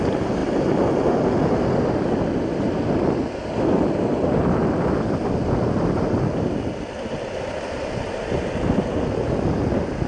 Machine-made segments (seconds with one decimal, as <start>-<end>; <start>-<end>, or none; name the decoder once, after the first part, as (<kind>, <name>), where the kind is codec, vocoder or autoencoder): none